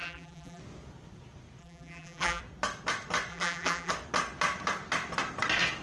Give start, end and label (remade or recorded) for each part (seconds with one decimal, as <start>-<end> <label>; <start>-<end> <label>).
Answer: 0.0-0.6 remade; 0.6-1.6 recorded; 1.6-2.4 remade; 2.4-3.3 recorded; 3.3-3.9 remade; 3.9-5.8 recorded